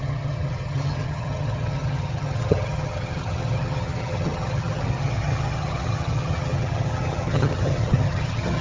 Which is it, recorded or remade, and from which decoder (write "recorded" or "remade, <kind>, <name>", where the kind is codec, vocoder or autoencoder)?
remade, vocoder, HiFi-GAN